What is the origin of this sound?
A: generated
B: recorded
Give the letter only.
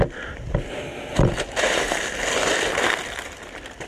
B